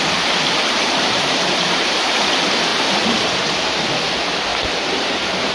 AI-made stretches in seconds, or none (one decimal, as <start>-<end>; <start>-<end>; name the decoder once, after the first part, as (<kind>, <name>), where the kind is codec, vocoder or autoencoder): 0.6-2.1 (vocoder, BigVGAN v2); 2.7-3.8; 4.5-5.5